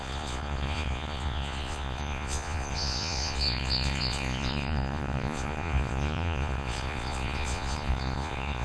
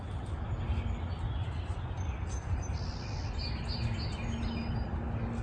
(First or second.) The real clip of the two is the second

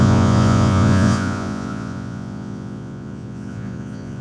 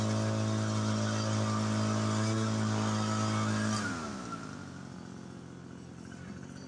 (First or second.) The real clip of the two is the second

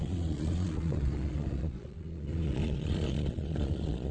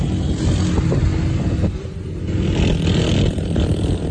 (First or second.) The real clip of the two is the second